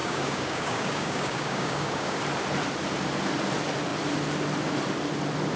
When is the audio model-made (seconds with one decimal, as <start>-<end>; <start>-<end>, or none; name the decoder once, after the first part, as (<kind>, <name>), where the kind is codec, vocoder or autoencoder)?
0.0-2.2 (codec, DAC)